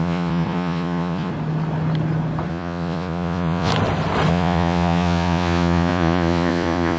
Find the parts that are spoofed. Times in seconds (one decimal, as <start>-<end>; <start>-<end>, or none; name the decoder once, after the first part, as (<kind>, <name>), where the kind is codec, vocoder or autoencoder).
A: 0.0-1.3 (vocoder, Vocos); 2.5-3.7; 4.3-7.0